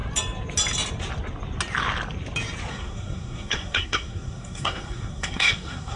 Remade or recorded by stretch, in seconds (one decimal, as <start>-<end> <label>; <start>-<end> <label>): 0.0-2.7 recorded; 2.7-6.0 remade